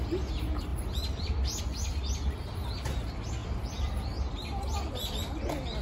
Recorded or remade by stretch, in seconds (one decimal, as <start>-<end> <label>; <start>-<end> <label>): 0.0-0.7 recorded; 0.7-1.6 remade; 1.6-3.4 recorded; 3.4-3.9 remade; 3.9-5.8 recorded